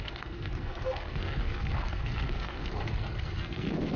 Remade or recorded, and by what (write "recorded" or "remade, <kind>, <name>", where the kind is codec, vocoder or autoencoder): remade, codec, SNAC